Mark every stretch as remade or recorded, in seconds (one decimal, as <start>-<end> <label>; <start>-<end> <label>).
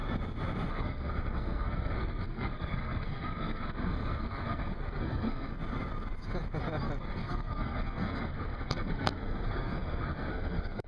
0.0-0.7 recorded; 0.7-5.5 remade; 5.5-7.0 recorded; 7.0-10.9 remade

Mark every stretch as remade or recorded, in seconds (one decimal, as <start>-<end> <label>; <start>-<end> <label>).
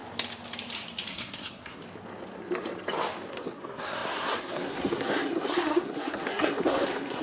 0.0-1.1 recorded; 1.1-1.8 remade; 1.8-3.3 recorded; 3.3-7.2 remade